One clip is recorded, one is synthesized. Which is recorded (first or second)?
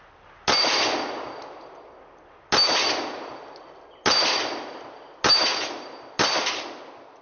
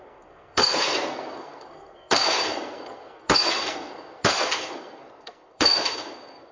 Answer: first